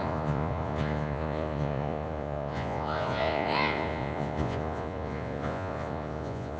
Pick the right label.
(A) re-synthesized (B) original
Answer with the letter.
A